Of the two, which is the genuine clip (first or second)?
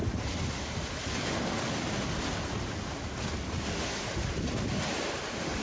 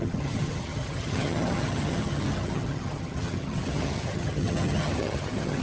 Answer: first